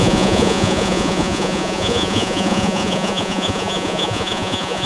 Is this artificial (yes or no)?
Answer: yes